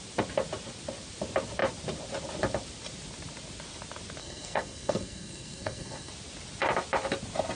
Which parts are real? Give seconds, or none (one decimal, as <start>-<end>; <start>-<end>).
0.0-4.2; 6.1-7.6